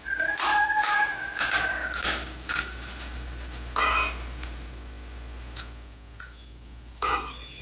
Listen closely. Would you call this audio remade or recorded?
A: recorded